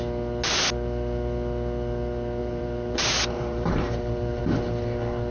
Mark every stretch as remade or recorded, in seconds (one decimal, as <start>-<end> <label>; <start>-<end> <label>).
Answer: 0.0-2.4 recorded; 2.4-4.4 remade; 4.4-5.3 recorded

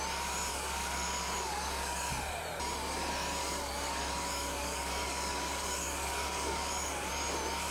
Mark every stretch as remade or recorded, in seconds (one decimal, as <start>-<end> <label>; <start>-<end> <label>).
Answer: 0.0-0.5 recorded; 0.5-2.1 remade; 2.1-3.4 recorded; 3.4-7.1 remade; 7.1-7.7 recorded

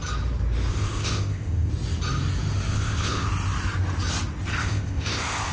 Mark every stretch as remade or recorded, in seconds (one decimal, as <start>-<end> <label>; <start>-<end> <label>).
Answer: 0.0-0.7 recorded; 0.7-1.7 remade; 1.7-2.7 recorded; 2.7-3.3 remade; 3.3-4.5 recorded; 4.5-5.5 remade

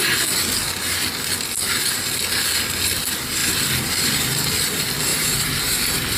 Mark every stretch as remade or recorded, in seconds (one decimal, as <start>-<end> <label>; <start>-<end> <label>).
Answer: 0.0-5.1 recorded; 5.1-5.6 remade; 5.6-6.2 recorded

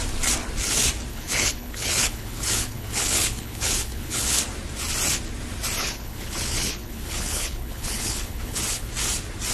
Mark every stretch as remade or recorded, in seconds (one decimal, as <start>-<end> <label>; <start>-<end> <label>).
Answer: 0.0-1.1 recorded; 1.1-4.4 remade; 4.4-5.8 recorded; 5.8-8.9 remade; 8.9-9.5 recorded